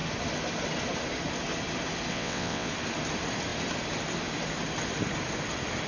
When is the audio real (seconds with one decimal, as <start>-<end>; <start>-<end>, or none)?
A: 0.0-2.1; 2.7-5.9